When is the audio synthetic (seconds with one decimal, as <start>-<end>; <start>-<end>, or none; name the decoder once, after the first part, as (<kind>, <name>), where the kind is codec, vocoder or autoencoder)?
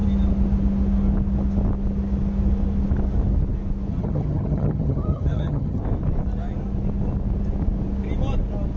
3.9-5.8 (vocoder, HiFi-GAN)